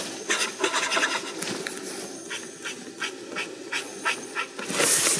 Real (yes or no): yes